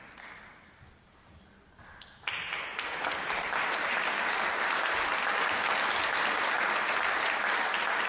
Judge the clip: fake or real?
real